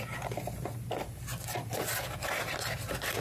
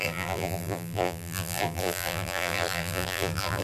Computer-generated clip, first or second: second